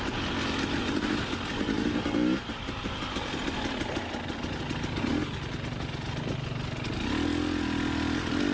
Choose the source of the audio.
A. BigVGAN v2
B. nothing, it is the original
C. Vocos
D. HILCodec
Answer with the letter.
B